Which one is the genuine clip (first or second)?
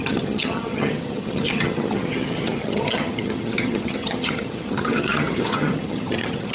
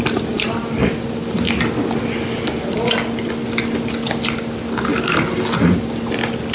second